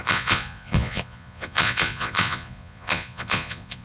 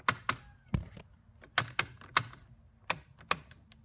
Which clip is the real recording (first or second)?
second